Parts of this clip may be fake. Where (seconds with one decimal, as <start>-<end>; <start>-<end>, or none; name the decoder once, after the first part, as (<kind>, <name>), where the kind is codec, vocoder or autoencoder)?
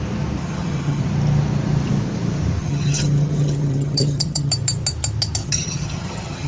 0.4-1.0 (vocoder, HiFi-GAN); 2.6-4.5; 5.4-6.5